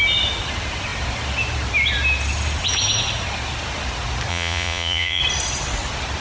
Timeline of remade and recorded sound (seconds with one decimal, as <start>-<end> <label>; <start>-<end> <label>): 0.0-4.3 recorded; 4.3-5.2 remade; 5.2-6.2 recorded